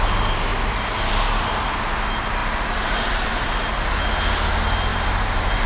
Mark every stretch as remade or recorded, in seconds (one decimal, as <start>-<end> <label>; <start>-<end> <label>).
0.0-2.4 recorded; 2.4-3.7 remade; 3.7-4.9 recorded; 4.9-5.7 remade